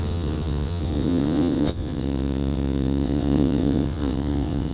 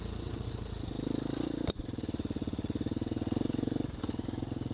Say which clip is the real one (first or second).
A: second